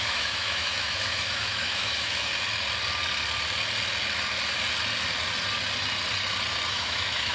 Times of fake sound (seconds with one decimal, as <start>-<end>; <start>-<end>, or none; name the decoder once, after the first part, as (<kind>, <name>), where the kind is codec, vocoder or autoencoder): 0.0-2.3 (autoencoder, DAC-VAE); 6.7-7.3